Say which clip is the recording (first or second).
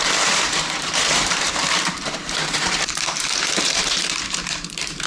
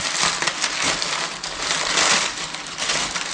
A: second